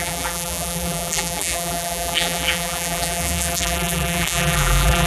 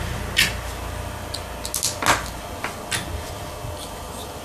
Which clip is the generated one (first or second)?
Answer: first